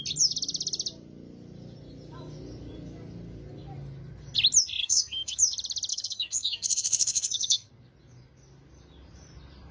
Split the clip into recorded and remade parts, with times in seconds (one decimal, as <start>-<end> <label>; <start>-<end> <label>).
0.0-4.8 recorded; 4.8-5.4 remade; 5.4-5.9 recorded; 5.9-7.7 remade; 7.7-9.7 recorded